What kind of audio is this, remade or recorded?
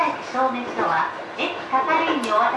recorded